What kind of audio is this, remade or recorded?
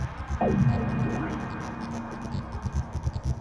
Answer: recorded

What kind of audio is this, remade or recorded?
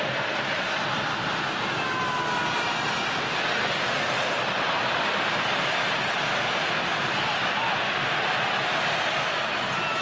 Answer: recorded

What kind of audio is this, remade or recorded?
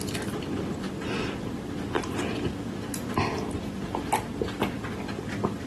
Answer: recorded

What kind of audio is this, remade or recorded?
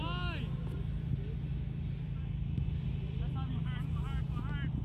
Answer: recorded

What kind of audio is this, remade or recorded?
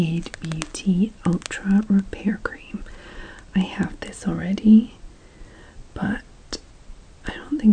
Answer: recorded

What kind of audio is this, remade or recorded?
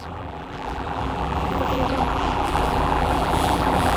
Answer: remade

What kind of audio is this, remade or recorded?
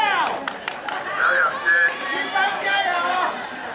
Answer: remade